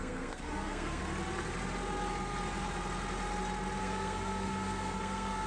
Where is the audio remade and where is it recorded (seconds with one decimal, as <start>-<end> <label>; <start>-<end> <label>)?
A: 0.0-1.0 remade; 1.0-3.8 recorded; 3.8-5.5 remade